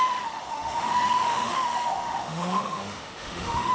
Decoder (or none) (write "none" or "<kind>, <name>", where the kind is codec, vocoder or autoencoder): autoencoder, DAC-VAE